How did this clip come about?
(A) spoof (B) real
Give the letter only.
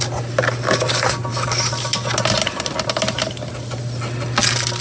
B